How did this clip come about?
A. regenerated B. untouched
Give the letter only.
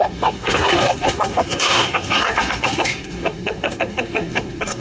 A